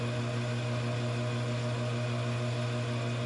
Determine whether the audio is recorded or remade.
recorded